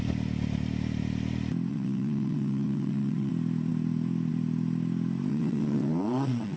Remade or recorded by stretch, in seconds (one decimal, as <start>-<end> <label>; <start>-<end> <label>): 0.0-1.7 recorded; 1.7-3.3 remade; 3.3-5.3 recorded; 5.3-6.6 remade